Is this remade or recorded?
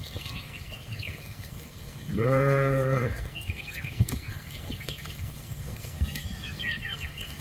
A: remade